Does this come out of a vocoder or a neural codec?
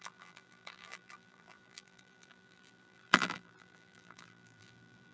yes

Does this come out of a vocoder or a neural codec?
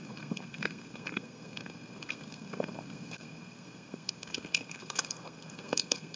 yes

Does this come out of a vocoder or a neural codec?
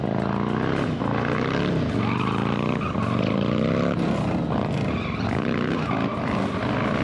no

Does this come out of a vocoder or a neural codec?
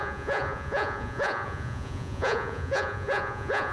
yes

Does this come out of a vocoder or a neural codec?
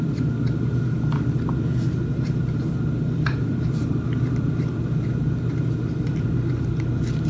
yes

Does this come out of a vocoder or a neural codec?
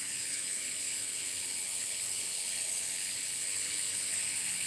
yes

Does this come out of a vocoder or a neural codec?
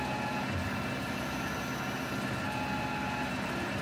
no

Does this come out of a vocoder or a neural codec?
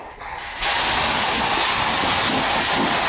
no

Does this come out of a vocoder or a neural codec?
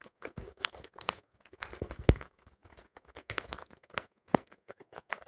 yes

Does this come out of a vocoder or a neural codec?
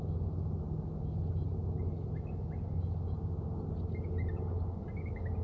no